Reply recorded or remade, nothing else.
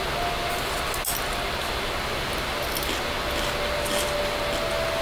recorded